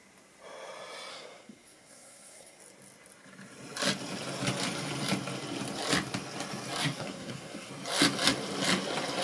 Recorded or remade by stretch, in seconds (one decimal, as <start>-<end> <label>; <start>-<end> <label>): 0.0-1.1 recorded; 1.1-2.6 remade; 2.6-6.8 recorded; 6.8-7.7 remade; 7.7-9.2 recorded